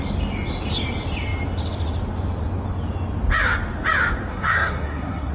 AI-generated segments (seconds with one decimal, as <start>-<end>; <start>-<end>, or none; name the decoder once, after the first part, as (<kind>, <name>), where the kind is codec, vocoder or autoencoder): 4.3-5.3 (codec, SNAC)

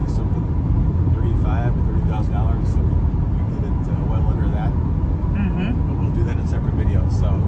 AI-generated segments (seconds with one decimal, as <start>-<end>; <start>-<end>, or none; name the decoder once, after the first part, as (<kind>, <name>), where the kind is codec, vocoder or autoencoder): none

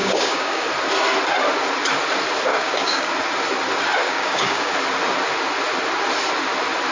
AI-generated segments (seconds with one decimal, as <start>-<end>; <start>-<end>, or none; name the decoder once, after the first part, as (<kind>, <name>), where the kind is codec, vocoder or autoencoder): 0.0-0.7 (codec, DAC); 2.5-3.1; 4.0-4.7

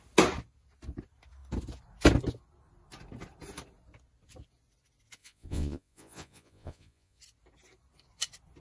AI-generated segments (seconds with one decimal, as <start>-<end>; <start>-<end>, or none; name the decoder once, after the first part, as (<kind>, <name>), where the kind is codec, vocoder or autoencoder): 5.2-7.2 (vocoder, Vocos)

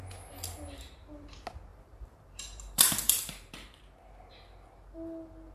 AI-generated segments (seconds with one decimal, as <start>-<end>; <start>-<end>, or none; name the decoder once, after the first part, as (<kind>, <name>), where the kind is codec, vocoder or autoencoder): 1.7-3.8 (vocoder, BigVGAN v2)